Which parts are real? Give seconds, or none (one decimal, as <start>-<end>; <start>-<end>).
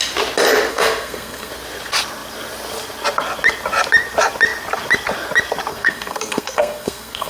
0.0-0.7; 1.5-5.7